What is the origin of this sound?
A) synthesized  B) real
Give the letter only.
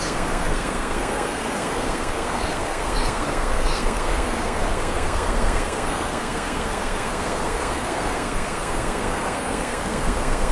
A